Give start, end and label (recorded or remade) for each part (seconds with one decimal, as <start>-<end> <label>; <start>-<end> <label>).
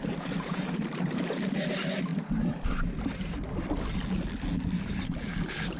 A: 0.0-2.1 remade; 2.1-4.8 recorded; 4.8-5.8 remade